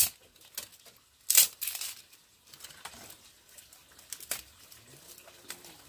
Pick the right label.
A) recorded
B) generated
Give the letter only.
A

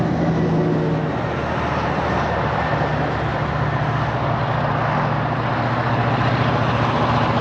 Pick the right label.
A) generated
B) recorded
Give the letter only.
B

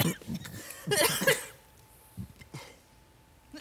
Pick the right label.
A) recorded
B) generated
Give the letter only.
A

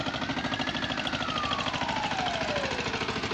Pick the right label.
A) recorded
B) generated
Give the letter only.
A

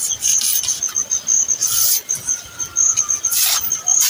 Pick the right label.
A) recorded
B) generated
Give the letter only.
A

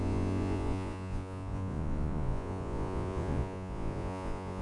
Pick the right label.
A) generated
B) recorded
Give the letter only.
A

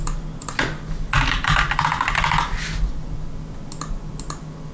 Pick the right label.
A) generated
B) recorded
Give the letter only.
B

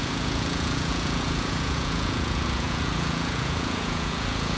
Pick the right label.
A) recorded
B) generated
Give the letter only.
B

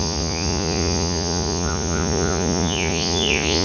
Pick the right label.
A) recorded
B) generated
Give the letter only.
B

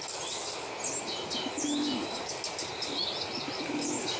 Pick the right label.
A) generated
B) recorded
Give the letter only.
B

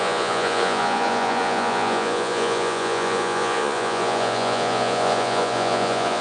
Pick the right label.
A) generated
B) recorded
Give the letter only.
A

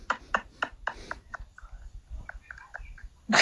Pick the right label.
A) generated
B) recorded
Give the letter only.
B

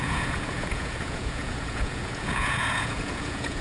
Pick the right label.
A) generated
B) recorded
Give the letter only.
A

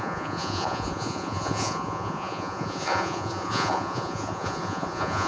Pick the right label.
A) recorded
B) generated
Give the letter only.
B